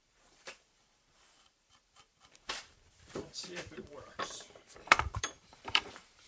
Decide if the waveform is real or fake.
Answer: fake